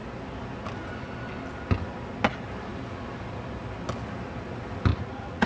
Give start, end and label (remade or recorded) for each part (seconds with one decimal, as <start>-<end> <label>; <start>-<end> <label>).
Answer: 0.0-4.9 recorded; 4.9-5.5 remade